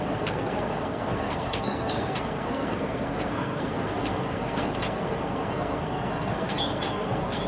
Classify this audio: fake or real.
fake